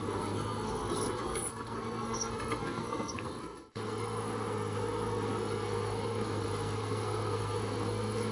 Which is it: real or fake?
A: fake